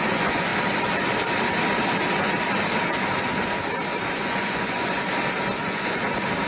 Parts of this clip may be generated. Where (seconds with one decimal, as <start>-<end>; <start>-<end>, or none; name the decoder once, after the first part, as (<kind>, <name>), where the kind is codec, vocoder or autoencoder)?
0.0-0.5 (vocoder, Vocos); 4.1-5.0; 5.6-6.0